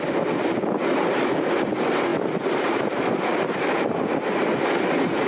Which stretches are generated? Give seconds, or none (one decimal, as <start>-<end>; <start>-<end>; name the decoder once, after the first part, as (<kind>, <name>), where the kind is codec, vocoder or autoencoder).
none